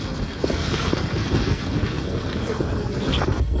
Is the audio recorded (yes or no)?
no